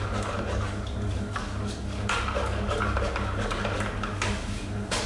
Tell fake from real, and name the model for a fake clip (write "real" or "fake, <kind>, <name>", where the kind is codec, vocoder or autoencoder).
fake, codec, DAC